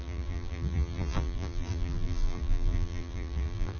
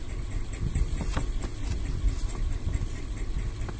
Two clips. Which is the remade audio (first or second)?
first